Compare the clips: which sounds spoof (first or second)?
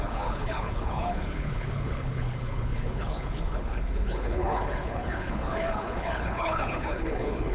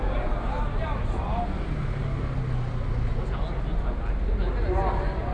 first